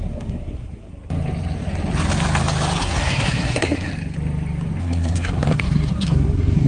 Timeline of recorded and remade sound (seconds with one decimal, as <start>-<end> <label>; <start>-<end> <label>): 0.0-0.9 remade; 0.9-2.8 recorded; 2.8-3.9 remade; 3.9-4.8 recorded; 4.8-6.7 remade